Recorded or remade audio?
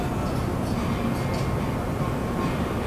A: recorded